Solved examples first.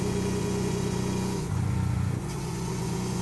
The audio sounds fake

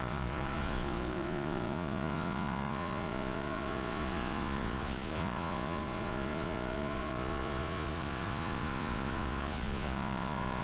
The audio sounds fake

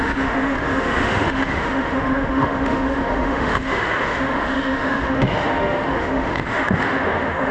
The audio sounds fake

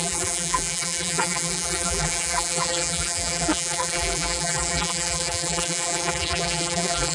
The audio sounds fake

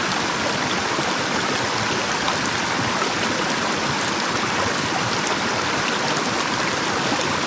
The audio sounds real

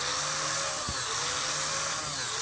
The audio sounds real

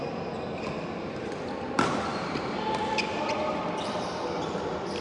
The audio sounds real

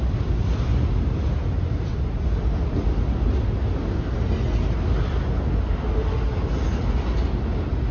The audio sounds real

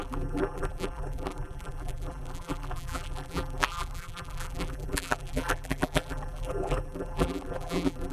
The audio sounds fake